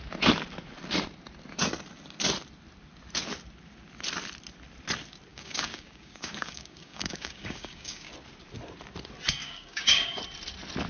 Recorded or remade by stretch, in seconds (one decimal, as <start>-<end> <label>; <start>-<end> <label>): 0.0-5.3 recorded; 5.3-8.1 remade; 8.1-9.4 recorded; 9.4-10.2 remade; 10.2-10.9 recorded